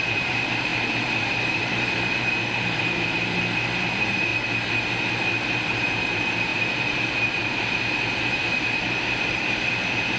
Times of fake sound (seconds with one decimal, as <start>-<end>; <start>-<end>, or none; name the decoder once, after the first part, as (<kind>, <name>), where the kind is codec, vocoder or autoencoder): 0.0-4.3 (vocoder, BigVGAN v2); 4.9-10.2